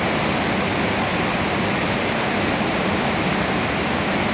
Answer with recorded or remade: recorded